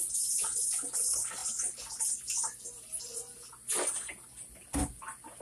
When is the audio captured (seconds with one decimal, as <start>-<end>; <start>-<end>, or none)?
0.0-5.4